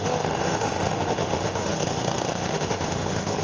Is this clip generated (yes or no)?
yes